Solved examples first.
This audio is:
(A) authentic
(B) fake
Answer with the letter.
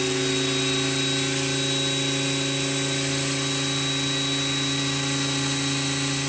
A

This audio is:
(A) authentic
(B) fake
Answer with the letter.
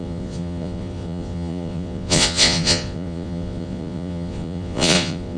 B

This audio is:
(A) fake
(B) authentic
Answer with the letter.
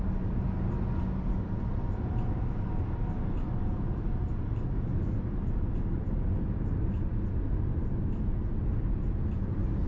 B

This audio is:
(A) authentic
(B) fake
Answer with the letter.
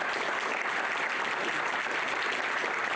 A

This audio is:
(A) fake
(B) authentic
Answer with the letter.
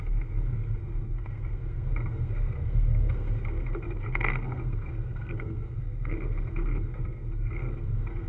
A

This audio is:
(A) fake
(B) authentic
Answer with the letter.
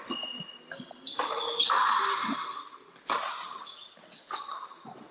B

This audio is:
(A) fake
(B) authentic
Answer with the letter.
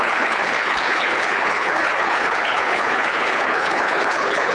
A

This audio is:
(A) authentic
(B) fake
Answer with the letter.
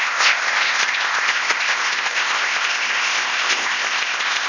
B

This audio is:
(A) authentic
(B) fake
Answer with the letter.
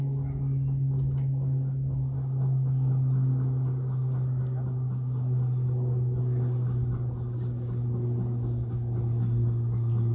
A